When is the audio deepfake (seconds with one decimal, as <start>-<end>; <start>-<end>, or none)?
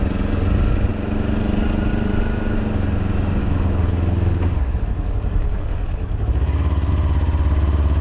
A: 3.4-6.9